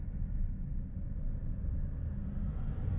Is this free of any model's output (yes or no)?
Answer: yes